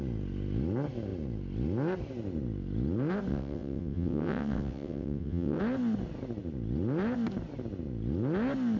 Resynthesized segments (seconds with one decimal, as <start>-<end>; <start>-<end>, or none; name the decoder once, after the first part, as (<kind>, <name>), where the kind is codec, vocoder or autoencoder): 3.3-5.6 (vocoder, WaveNeXt)